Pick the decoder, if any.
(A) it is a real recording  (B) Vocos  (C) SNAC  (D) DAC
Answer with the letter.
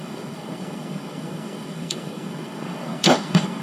C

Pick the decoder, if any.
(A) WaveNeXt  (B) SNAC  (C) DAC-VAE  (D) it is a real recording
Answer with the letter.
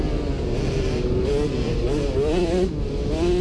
D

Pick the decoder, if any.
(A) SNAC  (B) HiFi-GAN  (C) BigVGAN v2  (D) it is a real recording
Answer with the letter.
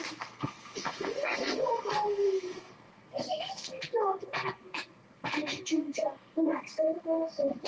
A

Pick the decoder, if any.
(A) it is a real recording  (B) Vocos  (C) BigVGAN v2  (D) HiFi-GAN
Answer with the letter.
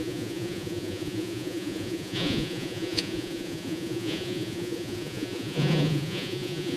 B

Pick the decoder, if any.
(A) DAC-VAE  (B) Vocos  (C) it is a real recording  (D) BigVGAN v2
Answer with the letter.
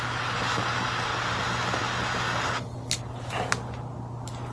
C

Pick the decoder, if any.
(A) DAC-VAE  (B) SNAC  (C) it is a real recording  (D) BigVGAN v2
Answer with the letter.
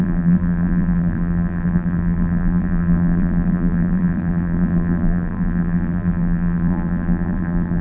D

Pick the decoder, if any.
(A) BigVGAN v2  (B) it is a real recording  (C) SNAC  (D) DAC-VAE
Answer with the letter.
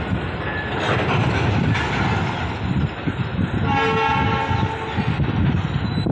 B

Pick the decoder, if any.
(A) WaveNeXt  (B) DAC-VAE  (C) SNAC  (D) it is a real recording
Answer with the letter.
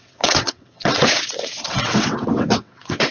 A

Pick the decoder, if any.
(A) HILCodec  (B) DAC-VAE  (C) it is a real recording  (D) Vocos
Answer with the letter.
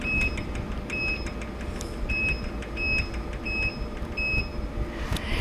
C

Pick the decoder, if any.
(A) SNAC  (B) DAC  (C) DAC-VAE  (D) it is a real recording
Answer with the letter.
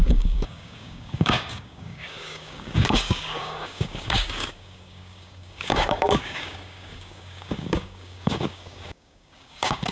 B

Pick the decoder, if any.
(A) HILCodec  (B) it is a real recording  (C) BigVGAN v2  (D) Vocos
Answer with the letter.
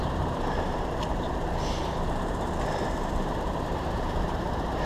C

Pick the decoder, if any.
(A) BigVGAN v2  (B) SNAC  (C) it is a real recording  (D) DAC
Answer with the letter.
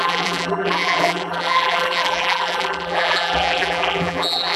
A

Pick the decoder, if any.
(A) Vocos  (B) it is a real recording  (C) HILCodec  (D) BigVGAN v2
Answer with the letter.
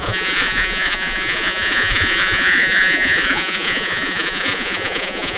A